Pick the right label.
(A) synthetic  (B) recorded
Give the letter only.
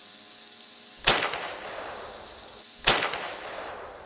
B